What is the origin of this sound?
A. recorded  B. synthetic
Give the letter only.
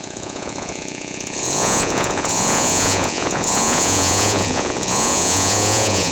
B